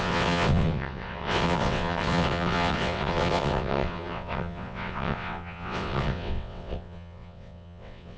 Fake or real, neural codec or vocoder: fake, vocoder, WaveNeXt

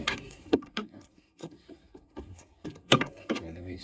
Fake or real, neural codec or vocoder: fake, codec, SNAC